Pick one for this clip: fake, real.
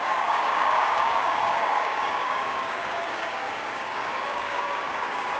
fake